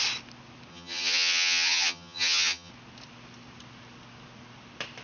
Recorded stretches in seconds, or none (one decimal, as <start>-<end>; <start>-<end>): 0.0-0.7; 2.7-5.0